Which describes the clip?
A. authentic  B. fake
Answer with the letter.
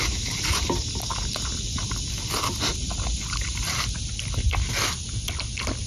A